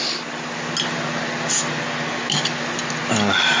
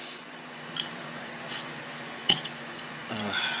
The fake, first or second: second